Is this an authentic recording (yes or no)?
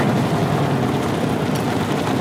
yes